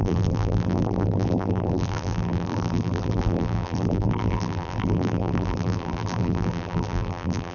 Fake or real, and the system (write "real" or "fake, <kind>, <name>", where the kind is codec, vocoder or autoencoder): fake, vocoder, BigVGAN v2